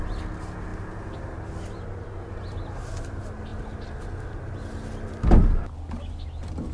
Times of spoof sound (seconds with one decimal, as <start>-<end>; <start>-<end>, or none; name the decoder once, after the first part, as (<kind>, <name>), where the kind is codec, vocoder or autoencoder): none